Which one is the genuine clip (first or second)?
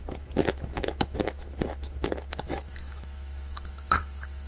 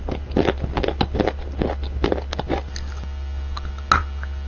second